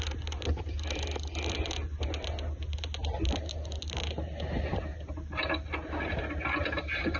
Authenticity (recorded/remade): recorded